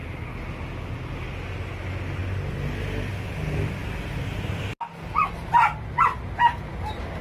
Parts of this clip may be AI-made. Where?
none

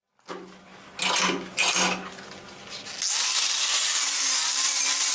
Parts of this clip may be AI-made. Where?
none

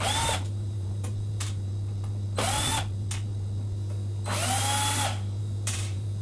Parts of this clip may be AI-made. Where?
0.0-1.7 (vocoder, BigVGAN v2); 5.4-6.2

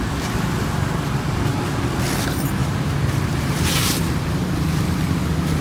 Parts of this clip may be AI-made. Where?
2.6-4.0 (vocoder, BigVGAN v2)

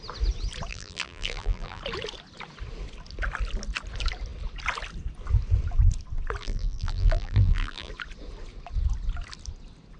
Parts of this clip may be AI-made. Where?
0.7-1.8 (vocoder, BigVGAN v2); 6.4-7.9

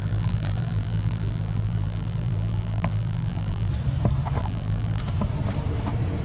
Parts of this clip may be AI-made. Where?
0.0-3.7 (vocoder, BigVGAN v2); 4.4-5.0